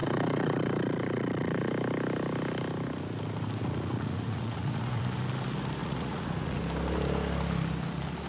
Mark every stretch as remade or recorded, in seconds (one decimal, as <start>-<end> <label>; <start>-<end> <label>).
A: 0.0-1.7 remade; 1.7-3.6 recorded; 3.6-5.0 remade; 5.0-5.8 recorded; 5.8-6.6 remade; 6.6-8.3 recorded